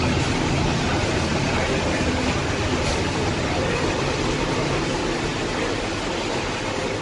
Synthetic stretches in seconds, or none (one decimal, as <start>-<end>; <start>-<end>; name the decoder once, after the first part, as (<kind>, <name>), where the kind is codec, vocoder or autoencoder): none